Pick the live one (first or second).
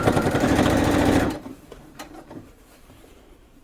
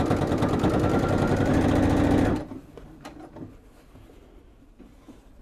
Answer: second